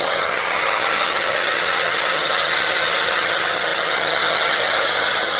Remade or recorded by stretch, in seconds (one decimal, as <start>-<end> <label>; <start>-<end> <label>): 0.0-5.4 remade

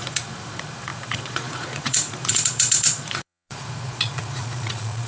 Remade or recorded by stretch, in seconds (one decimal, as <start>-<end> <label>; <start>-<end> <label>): 0.0-5.1 remade

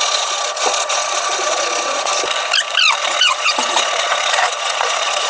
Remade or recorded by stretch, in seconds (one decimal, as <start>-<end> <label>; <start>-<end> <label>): 0.0-2.1 remade; 2.1-3.0 recorded; 3.0-5.3 remade

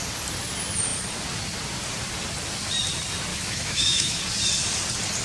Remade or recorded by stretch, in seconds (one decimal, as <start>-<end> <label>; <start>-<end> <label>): 0.0-3.3 recorded; 3.3-4.2 remade; 4.2-5.2 recorded